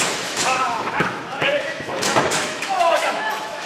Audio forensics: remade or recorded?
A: remade